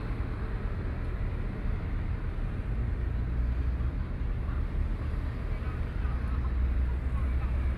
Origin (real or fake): real